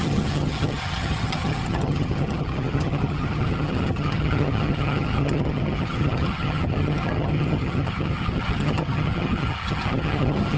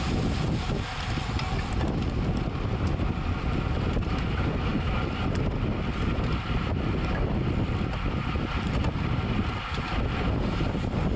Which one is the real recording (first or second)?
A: second